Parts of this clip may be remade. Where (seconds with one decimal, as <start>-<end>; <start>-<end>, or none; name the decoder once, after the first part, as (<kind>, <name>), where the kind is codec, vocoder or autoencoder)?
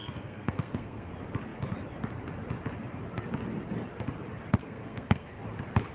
0.0-1.1 (codec, SNAC); 4.6-5.4